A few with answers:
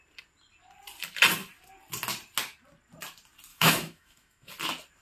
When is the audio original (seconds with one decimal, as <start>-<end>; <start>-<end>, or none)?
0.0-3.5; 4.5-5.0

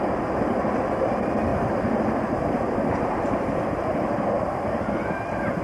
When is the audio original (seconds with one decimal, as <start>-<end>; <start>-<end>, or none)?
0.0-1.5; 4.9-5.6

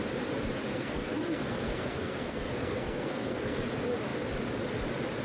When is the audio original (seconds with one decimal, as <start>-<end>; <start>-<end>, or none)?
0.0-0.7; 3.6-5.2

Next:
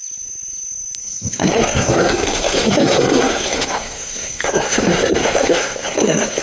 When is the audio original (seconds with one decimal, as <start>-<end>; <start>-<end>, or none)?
0.0-1.0

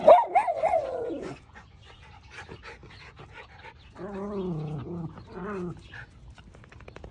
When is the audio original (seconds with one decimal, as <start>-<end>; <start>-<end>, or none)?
0.0-0.5; 2.0-7.1

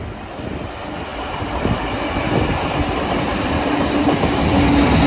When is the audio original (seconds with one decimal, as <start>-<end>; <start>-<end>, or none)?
0.0-5.1